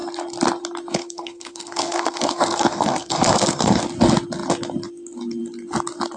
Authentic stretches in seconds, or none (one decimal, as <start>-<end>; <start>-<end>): 0.0-1.0; 3.8-6.2

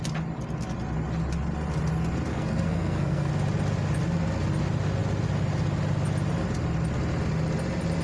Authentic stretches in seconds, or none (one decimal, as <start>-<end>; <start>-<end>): 0.0-2.3; 3.3-8.0

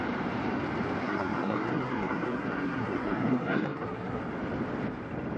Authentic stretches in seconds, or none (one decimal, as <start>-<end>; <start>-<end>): 0.0-1.0; 4.2-5.4

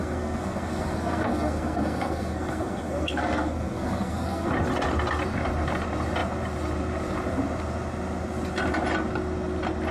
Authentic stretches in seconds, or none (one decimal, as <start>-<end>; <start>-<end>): 4.5-9.9

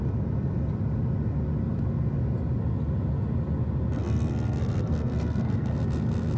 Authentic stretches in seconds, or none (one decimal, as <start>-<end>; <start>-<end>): 0.0-4.0; 5.7-6.4

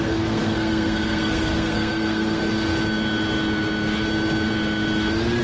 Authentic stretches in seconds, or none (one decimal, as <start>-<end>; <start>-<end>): 2.4-5.4

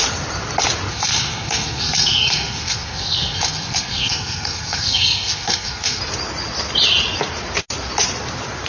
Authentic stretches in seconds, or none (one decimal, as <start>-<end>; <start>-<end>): 0.0-0.9; 6.0-8.7